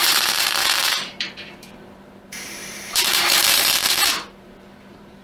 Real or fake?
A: fake